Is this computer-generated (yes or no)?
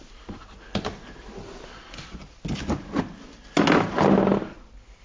no